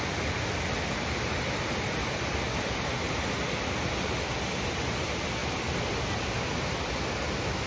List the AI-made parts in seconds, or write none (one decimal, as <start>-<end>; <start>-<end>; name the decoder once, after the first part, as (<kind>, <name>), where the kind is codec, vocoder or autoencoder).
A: none